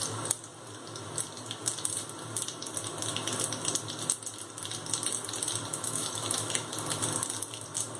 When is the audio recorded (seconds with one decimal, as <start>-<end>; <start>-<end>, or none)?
0.0-5.7; 7.0-8.0